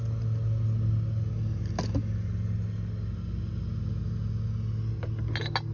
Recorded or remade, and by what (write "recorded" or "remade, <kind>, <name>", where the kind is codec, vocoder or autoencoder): recorded